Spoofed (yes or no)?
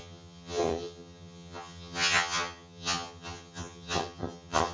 yes